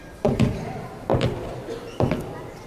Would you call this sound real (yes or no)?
no